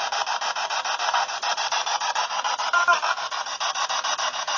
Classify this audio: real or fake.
real